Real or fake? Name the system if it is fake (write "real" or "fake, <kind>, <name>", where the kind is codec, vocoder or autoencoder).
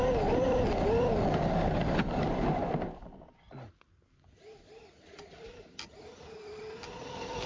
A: real